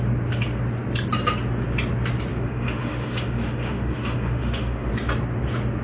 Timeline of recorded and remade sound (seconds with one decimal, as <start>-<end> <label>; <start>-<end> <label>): 0.0-2.3 recorded; 2.3-4.9 remade; 4.9-5.8 recorded